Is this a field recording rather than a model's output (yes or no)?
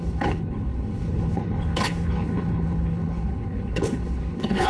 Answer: no